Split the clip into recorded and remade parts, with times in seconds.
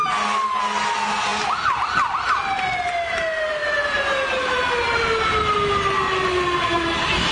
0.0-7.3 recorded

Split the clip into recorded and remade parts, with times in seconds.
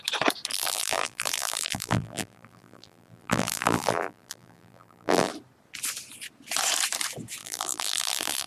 0.0-0.5 recorded; 0.5-5.3 remade; 5.3-7.4 recorded; 7.4-8.5 remade